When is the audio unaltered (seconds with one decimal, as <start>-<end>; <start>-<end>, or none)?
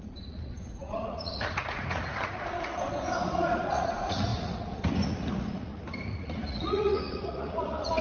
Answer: none